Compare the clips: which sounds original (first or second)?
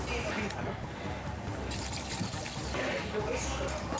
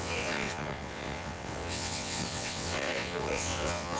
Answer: first